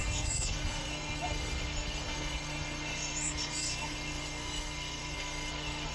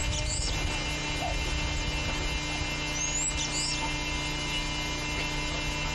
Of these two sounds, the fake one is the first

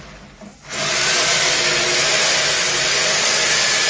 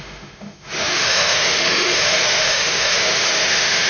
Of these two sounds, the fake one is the second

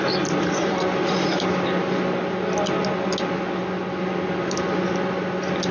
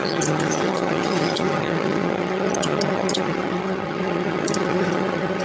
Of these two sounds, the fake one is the second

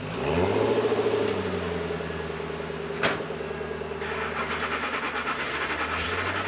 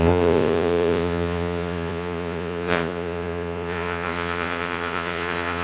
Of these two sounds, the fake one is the second